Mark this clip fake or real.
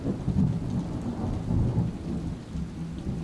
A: real